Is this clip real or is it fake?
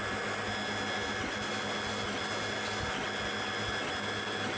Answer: real